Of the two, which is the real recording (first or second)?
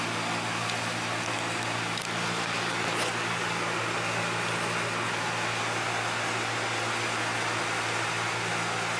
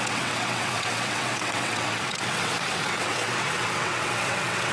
first